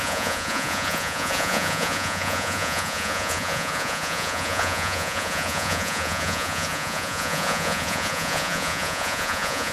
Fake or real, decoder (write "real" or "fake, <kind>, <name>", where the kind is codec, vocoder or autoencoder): fake, vocoder, Vocos